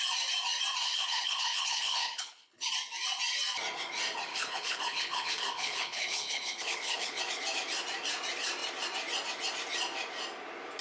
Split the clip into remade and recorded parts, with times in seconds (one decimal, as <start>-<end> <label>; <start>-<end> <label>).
0.0-0.8 recorded; 0.8-2.7 remade; 2.7-4.3 recorded; 4.3-7.2 remade; 7.2-10.8 recorded